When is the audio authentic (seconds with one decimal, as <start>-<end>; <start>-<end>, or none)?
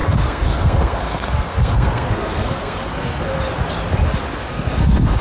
3.3-4.5